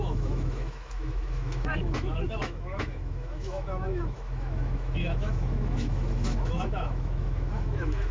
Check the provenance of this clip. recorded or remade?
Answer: remade